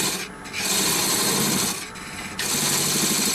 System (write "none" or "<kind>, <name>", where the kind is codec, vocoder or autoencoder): none